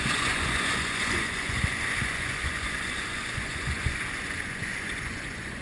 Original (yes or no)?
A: no